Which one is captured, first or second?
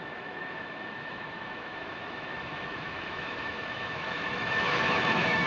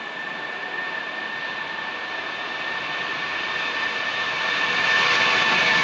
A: second